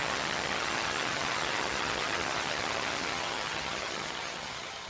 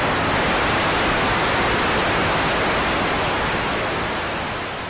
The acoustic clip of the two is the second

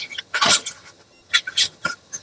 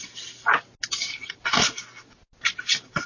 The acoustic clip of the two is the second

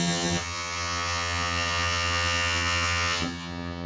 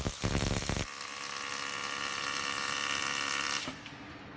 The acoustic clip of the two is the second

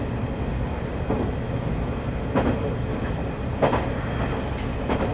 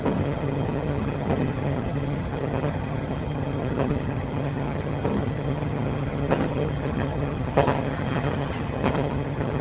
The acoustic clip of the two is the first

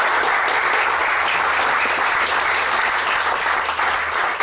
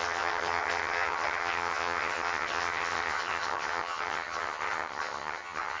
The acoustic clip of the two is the first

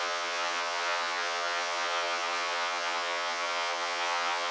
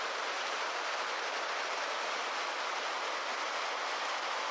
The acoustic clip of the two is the second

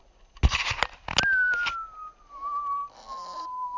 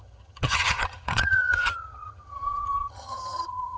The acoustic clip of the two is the first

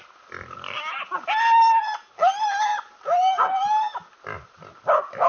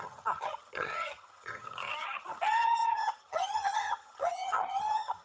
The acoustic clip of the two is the first